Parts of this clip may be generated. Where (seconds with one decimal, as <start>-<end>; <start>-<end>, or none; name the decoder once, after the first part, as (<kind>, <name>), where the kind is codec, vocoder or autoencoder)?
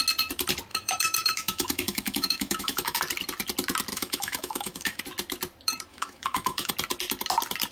0.7-3.0 (autoencoder, DAC-VAE); 3.9-5.0; 5.9-6.7